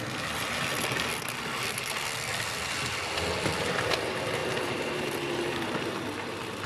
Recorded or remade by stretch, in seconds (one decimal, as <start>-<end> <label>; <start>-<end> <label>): 0.0-6.7 recorded